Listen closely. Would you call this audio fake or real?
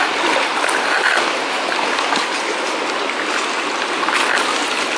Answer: real